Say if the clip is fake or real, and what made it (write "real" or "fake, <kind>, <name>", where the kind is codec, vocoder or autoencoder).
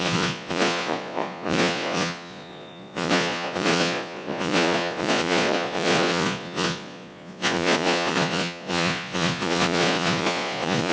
fake, vocoder, Vocos